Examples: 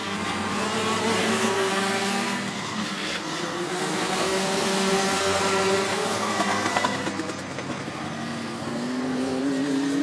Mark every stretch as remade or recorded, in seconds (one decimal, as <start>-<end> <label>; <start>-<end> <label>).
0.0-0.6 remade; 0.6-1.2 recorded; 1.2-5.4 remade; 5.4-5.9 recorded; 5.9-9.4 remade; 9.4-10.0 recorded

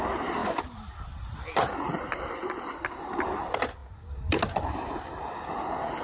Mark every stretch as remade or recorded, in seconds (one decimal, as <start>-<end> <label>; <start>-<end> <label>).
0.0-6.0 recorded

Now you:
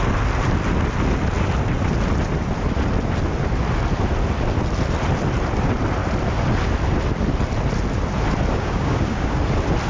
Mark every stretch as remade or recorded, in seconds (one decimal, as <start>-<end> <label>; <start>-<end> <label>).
0.0-8.5 recorded; 8.5-9.4 remade; 9.4-9.9 recorded

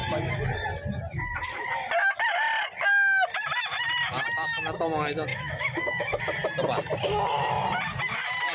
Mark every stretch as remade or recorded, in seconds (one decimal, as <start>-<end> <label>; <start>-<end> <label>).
0.0-5.3 recorded; 5.3-6.2 remade; 6.2-8.5 recorded

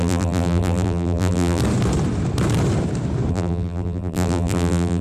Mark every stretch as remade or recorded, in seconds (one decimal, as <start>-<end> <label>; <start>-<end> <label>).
0.0-1.6 remade; 1.6-3.3 recorded; 3.3-5.0 remade